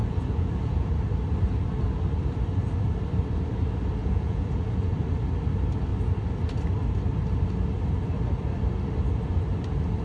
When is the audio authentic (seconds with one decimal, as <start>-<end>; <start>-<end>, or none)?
0.9-4.0; 4.9-10.0